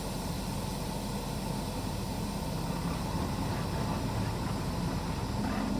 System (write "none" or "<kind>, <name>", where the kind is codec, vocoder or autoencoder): none